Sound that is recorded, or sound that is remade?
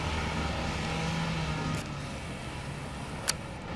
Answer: recorded